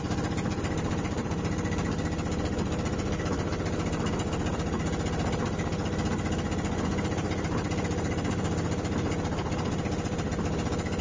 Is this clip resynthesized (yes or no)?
no